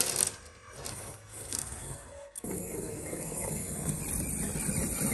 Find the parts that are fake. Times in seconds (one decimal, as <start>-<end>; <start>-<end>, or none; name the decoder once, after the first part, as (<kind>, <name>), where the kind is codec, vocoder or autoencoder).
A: 0.9-4.0 (codec, SNAC)